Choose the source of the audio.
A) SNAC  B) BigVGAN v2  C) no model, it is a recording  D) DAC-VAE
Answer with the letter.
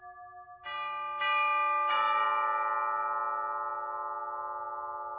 C